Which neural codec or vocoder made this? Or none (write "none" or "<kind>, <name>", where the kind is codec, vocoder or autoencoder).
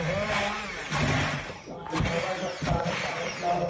none